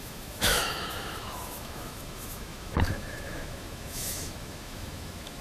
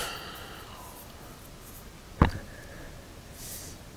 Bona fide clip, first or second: second